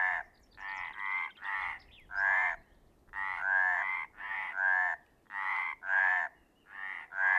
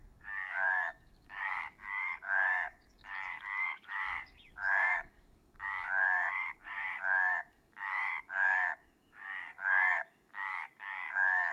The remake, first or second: second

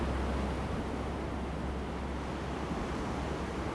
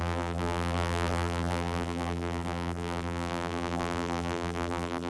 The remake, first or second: second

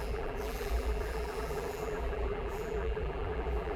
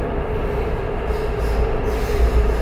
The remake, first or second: first